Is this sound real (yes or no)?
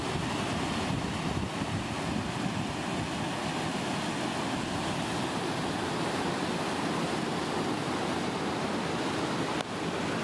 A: yes